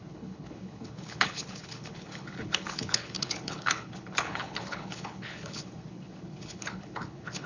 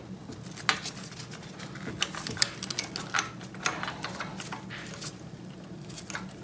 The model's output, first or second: first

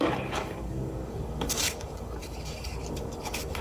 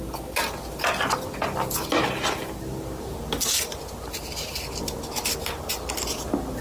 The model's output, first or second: first